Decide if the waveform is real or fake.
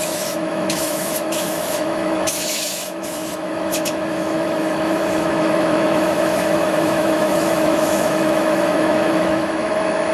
fake